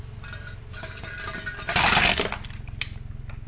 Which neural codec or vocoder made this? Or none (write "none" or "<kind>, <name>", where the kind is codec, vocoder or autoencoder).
none